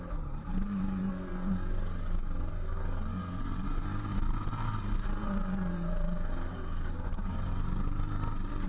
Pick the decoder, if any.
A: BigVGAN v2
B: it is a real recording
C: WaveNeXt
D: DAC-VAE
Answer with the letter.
A